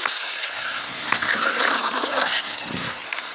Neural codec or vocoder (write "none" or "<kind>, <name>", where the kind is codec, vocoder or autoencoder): codec, SNAC